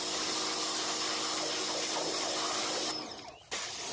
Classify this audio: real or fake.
real